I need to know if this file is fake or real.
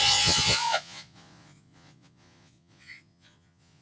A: fake